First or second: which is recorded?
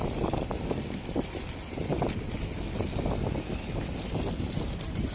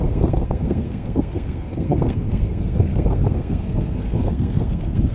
first